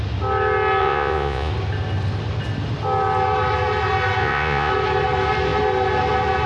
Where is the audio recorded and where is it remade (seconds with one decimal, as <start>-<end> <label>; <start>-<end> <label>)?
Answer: 0.0-0.8 recorded; 0.8-1.5 remade; 1.5-4.2 recorded; 4.2-4.7 remade; 4.7-6.5 recorded